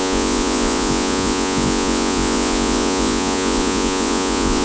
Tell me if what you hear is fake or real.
fake